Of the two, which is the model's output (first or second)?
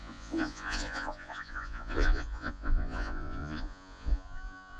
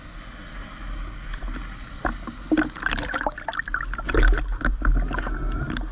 first